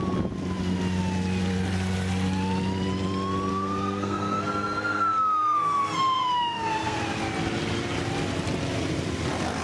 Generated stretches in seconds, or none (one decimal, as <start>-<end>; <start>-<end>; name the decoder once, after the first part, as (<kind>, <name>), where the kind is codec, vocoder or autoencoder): 3.5-7.0 (codec, SNAC)